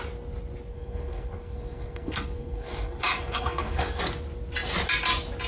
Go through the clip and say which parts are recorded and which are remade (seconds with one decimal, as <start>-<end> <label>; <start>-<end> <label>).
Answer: 0.0-0.7 recorded; 0.7-4.0 remade; 4.0-5.5 recorded